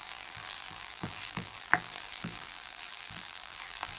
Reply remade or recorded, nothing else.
remade